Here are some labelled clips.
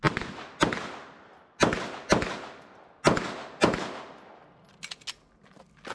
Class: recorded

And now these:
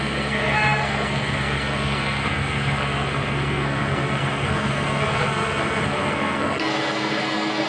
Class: remade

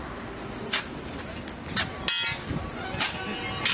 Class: recorded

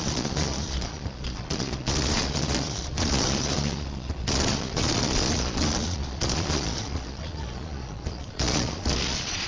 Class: remade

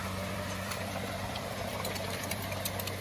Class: remade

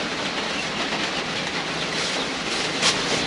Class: recorded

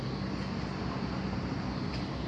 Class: recorded